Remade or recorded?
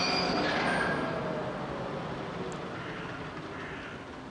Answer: recorded